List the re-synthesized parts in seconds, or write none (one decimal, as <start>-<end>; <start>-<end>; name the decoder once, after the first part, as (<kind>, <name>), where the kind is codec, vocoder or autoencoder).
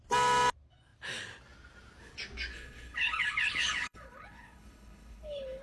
2.5-5.6 (codec, HILCodec)